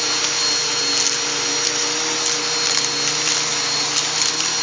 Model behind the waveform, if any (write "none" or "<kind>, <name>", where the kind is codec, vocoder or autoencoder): none